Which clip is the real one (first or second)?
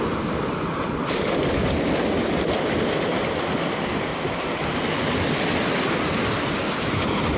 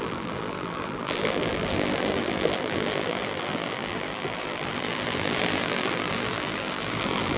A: first